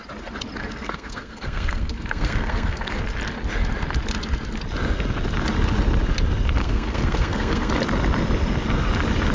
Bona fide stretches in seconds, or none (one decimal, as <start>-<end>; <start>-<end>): 0.0-0.6; 3.0-6.6; 7.7-9.3